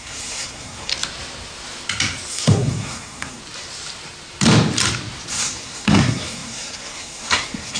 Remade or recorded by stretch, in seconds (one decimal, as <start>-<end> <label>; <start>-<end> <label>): 0.0-0.9 remade; 0.9-2.3 recorded; 2.3-3.4 remade; 3.4-5.3 recorded; 5.3-7.8 remade